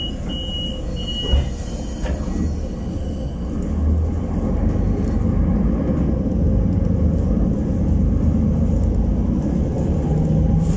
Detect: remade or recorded recorded